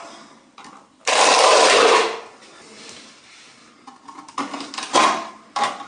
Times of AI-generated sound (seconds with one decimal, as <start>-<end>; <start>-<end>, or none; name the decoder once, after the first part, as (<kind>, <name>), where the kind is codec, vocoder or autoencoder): none